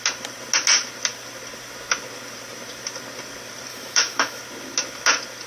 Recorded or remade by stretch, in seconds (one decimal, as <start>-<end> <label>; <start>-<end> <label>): 0.0-3.7 recorded; 3.7-4.4 remade; 4.4-5.5 recorded